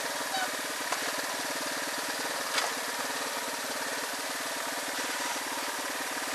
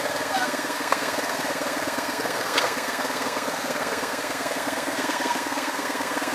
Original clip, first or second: first